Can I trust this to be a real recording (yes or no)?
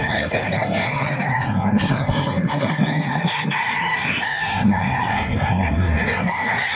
no